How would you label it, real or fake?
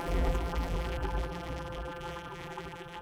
fake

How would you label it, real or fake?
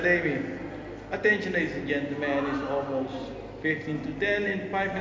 real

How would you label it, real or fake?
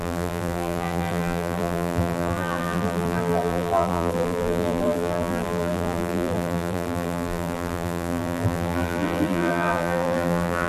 fake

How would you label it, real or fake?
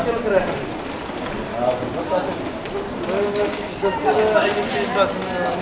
real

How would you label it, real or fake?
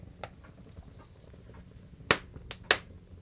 real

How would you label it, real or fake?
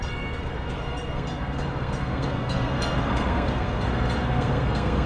fake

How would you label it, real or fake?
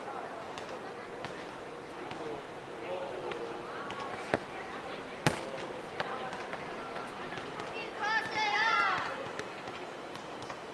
real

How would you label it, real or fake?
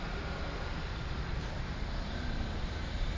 fake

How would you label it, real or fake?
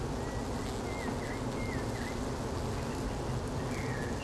real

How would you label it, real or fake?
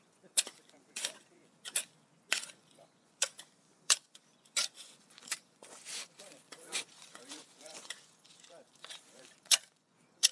fake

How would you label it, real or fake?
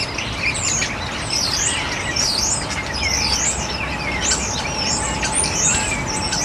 real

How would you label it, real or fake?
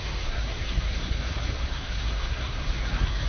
fake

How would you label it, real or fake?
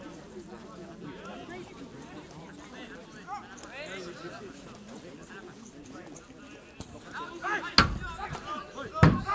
real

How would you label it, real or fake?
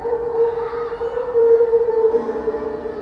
fake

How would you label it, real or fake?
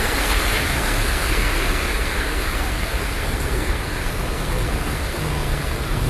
fake